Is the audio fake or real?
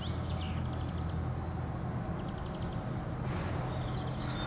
real